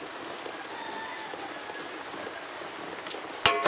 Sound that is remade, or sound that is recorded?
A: recorded